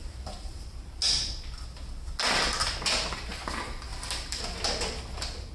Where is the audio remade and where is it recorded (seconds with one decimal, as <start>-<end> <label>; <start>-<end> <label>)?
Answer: 0.0-0.9 remade; 0.9-5.5 recorded